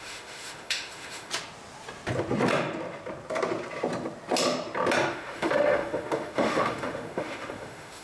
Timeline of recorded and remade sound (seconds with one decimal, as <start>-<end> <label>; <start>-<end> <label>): 0.0-1.3 remade; 1.3-5.1 recorded; 5.1-8.0 remade